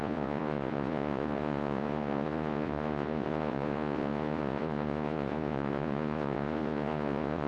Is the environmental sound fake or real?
fake